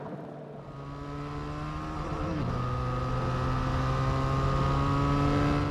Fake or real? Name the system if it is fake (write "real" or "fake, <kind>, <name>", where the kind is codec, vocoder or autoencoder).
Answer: real